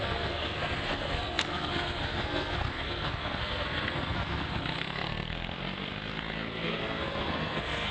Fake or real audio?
fake